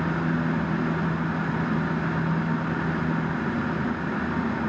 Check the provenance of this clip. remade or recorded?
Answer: recorded